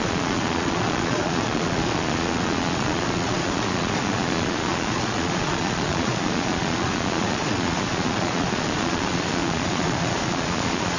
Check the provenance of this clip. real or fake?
fake